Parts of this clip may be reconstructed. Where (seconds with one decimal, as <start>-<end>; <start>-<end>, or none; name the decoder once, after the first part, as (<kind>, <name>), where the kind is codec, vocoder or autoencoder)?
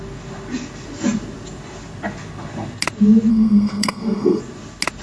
3.3-4.4 (codec, SNAC)